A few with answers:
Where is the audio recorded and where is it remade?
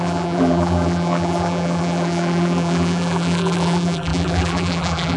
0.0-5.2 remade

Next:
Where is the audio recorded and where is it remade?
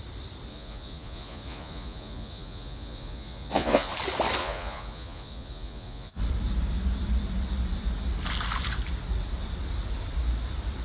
0.0-0.5 recorded; 0.5-3.9 remade; 3.9-4.4 recorded; 4.4-6.2 remade; 6.2-10.8 recorded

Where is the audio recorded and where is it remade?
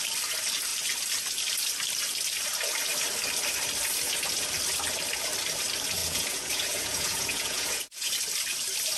0.0-6.0 recorded; 6.0-8.1 remade; 8.1-9.0 recorded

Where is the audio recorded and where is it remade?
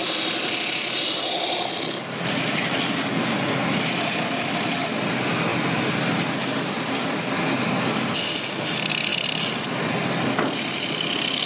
0.0-11.5 recorded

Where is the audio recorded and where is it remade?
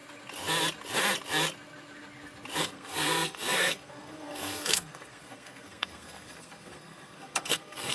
0.0-2.6 recorded; 2.6-7.9 remade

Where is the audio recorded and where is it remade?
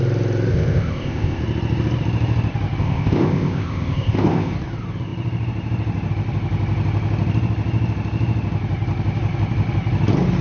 0.0-0.5 recorded; 0.5-1.4 remade; 1.4-2.8 recorded; 2.8-4.5 remade; 4.5-10.4 recorded